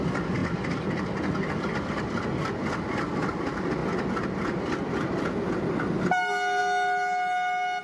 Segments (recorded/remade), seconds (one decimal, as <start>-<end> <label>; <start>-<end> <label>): 0.0-7.8 recorded